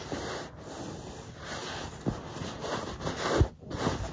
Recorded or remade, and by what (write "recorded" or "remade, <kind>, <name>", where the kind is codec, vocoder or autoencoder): recorded